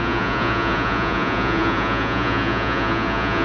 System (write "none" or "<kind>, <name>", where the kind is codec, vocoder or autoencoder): vocoder, Vocos